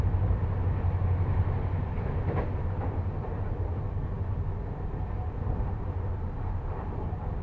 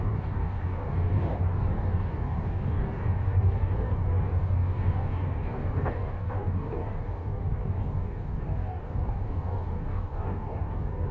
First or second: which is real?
first